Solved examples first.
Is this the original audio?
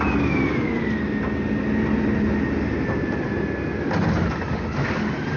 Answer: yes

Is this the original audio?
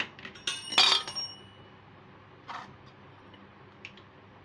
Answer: yes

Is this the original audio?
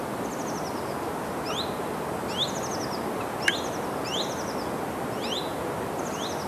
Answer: yes